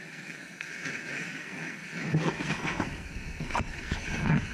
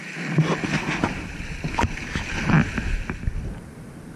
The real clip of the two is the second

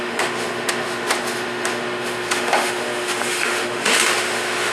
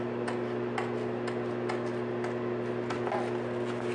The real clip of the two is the second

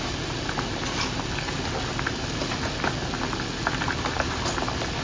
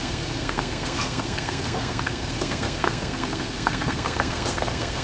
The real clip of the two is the first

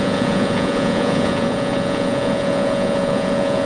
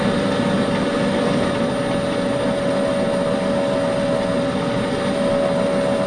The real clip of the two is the second